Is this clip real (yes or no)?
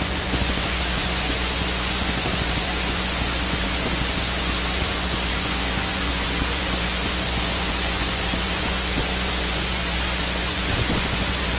no